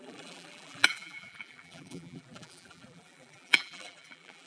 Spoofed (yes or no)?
yes